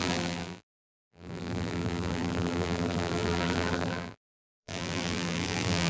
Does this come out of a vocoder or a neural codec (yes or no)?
yes